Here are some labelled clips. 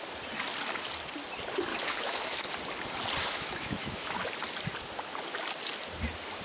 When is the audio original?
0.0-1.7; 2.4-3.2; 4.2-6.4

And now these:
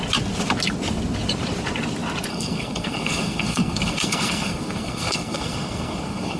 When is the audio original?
0.0-2.3

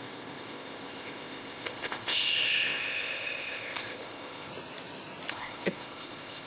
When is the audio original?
4.5-5.3

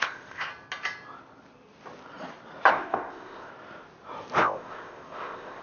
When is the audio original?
0.5-2.7; 3.5-4.4